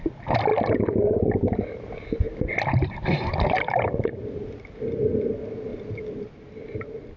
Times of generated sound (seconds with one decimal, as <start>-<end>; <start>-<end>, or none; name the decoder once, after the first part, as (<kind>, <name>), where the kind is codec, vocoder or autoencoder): none